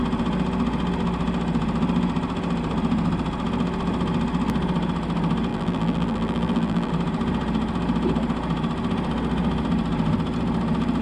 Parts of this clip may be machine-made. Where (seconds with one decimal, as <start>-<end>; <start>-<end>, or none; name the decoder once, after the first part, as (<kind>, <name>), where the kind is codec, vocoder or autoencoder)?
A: 5.5-6.9 (vocoder, BigVGAN v2)

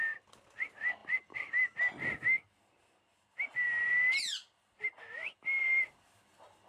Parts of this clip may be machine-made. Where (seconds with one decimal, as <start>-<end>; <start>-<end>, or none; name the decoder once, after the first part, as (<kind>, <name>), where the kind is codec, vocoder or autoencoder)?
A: 1.0-1.5 (vocoder, BigVGAN v2)

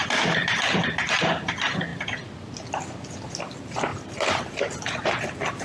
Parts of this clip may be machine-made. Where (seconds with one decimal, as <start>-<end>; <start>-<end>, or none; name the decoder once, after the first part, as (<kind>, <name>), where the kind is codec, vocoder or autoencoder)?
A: 0.0-1.9 (vocoder, BigVGAN v2); 3.4-5.6